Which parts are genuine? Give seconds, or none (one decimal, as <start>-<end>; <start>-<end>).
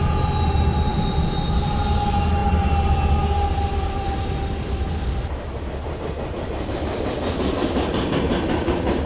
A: 0.0-9.1